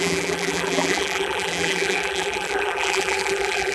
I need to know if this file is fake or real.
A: fake